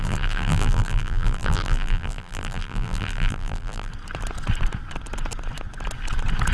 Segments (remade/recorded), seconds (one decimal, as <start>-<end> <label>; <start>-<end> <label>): 0.0-3.9 remade; 3.9-6.5 recorded